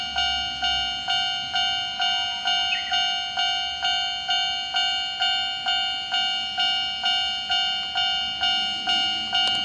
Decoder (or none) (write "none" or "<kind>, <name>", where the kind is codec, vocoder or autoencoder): none